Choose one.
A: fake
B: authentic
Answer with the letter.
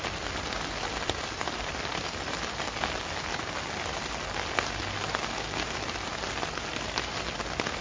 B